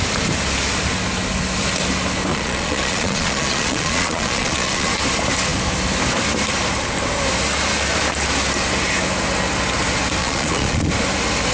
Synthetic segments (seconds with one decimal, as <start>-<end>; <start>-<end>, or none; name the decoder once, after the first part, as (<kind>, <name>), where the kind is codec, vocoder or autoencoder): 2.3-4.9 (vocoder, Vocos); 10.2-10.9

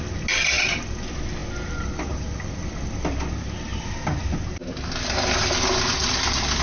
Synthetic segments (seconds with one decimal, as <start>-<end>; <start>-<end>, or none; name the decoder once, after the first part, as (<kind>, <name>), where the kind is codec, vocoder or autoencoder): none